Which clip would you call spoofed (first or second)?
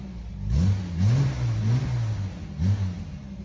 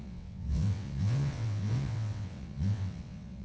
second